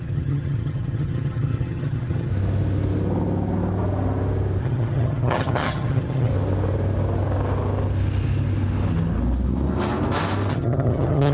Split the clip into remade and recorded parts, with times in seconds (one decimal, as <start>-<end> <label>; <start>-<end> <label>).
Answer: 0.0-2.3 remade; 2.3-4.6 recorded; 4.6-6.3 remade; 6.3-10.5 recorded; 10.5-11.3 remade